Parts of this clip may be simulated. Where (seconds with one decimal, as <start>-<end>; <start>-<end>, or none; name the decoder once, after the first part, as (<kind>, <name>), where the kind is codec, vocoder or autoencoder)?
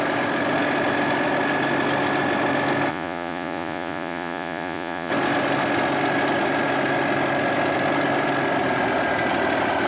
2.9-5.1 (vocoder, Vocos)